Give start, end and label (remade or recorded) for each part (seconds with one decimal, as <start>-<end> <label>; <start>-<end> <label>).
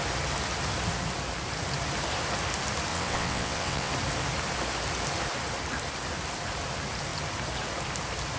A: 0.0-2.9 recorded; 2.9-3.9 remade; 3.9-8.4 recorded